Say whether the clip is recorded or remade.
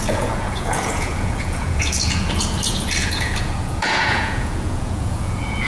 remade